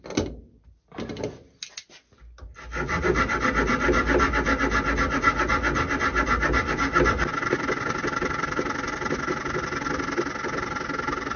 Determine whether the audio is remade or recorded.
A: recorded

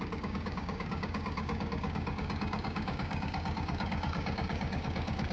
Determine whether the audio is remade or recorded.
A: remade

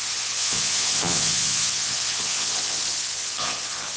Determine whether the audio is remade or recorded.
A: remade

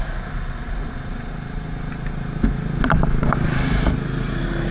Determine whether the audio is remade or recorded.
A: recorded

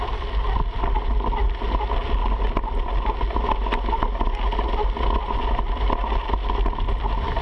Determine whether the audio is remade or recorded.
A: recorded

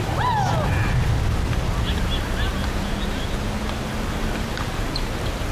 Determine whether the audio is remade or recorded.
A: recorded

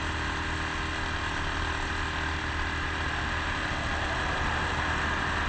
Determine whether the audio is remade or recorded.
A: recorded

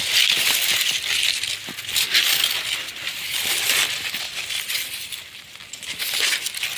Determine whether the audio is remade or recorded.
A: recorded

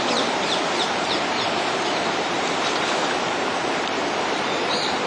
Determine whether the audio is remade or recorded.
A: remade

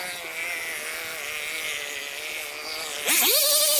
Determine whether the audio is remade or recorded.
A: recorded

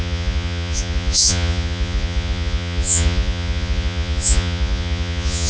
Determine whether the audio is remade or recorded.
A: remade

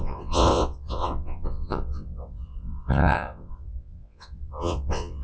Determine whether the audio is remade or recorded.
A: remade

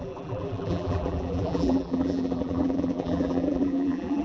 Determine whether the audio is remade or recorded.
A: remade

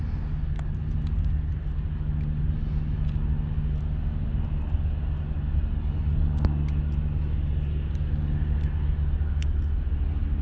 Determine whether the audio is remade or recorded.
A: recorded